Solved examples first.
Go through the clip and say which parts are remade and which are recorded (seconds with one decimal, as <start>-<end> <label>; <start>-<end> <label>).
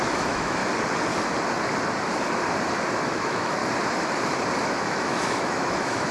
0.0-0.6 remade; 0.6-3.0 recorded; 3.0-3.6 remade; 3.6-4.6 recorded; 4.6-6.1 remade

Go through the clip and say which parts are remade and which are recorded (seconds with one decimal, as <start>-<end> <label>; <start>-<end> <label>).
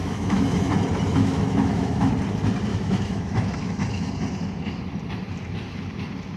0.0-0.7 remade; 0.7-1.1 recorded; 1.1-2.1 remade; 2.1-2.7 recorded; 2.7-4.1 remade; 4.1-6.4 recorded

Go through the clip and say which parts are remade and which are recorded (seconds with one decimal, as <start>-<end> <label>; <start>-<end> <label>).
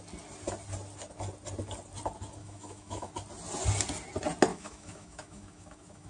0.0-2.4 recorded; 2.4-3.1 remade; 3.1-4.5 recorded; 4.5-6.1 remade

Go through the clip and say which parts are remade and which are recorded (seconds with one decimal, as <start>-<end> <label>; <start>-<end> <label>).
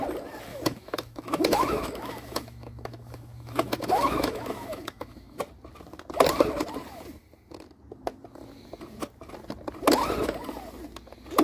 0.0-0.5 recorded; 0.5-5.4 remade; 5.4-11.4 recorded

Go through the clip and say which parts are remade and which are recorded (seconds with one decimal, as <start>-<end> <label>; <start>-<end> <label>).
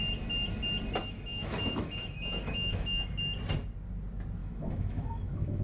0.0-1.0 recorded; 1.0-3.1 remade; 3.1-4.4 recorded; 4.4-5.6 remade